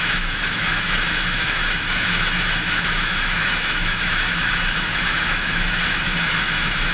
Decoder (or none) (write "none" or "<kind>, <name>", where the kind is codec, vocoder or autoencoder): autoencoder, DAC-VAE